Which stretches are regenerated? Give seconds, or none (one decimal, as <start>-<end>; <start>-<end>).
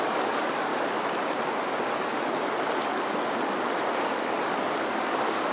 0.0-0.7; 4.0-5.5